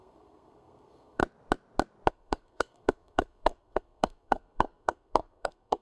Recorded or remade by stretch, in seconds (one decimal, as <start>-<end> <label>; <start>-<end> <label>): 0.0-1.2 remade; 1.2-2.1 recorded; 2.1-5.8 remade